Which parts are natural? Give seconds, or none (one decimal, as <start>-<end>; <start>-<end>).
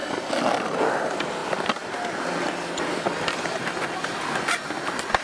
0.0-5.2